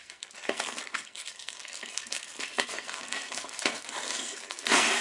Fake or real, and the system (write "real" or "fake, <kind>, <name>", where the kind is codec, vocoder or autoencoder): fake, codec, SNAC